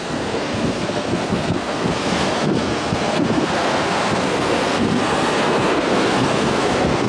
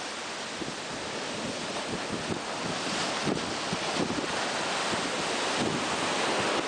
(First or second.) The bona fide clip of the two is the second